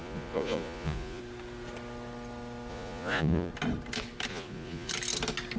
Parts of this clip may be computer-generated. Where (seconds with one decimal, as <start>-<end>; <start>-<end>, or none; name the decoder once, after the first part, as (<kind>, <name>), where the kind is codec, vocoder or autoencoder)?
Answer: 0.0-1.2 (vocoder, Vocos); 2.7-3.5; 4.3-4.9